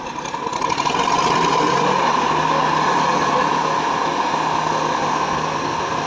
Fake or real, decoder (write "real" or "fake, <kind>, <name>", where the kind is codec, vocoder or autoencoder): real